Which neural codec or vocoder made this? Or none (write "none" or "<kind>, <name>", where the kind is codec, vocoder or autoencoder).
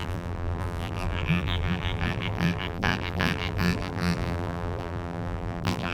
vocoder, BigVGAN v2